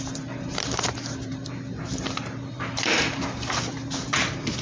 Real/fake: fake